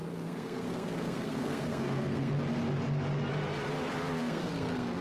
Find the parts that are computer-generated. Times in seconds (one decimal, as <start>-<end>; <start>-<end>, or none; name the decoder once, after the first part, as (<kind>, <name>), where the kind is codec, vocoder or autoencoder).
0.0-2.3 (codec, SNAC); 4.2-5.0